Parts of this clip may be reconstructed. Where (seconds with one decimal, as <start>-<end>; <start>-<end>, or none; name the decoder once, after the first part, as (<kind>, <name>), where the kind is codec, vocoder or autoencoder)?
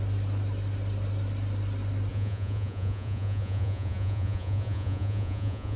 2.1-5.8 (vocoder, Vocos)